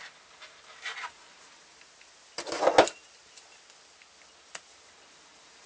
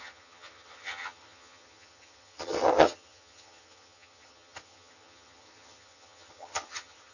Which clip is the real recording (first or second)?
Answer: first